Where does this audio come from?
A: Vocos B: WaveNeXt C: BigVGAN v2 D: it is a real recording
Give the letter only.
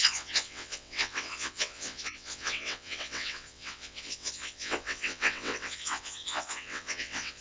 B